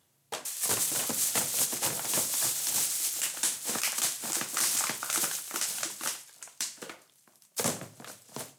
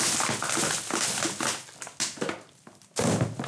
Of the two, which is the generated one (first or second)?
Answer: first